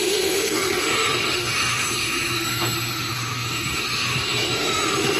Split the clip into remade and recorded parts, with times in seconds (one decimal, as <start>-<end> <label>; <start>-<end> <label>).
0.0-5.2 remade

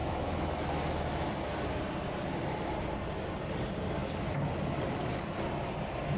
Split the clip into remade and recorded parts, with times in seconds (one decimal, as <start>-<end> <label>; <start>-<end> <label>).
0.0-1.3 remade; 1.3-6.2 recorded

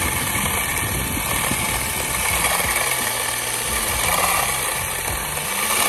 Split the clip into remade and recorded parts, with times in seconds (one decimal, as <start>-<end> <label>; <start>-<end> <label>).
0.0-5.9 recorded

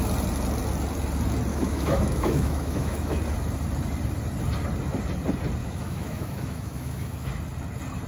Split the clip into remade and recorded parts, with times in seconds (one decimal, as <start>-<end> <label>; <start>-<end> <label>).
0.0-1.5 recorded; 1.5-3.2 remade; 3.2-5.6 recorded; 5.6-7.3 remade; 7.3-8.1 recorded

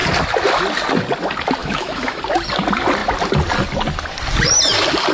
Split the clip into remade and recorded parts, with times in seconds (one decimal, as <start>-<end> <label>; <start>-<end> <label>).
0.0-1.6 recorded; 1.6-2.2 remade; 2.2-5.1 recorded

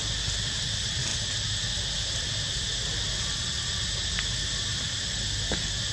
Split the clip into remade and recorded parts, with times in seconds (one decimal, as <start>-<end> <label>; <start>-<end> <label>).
0.0-5.9 recorded